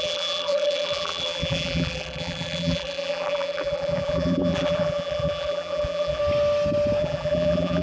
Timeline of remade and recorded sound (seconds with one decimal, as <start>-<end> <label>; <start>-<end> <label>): 0.0-6.2 remade; 6.2-7.0 recorded; 7.0-7.8 remade